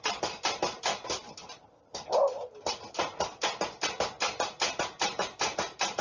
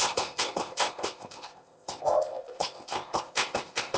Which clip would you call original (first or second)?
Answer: first